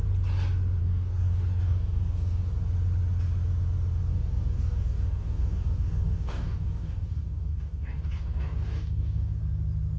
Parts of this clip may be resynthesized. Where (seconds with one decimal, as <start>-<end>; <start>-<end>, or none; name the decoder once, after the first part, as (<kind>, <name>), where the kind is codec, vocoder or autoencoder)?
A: 0.8-2.5 (codec, DAC); 4.1-9.4